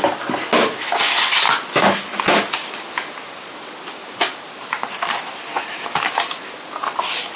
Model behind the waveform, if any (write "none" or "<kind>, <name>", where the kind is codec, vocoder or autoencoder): none